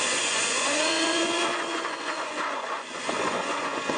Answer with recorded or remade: remade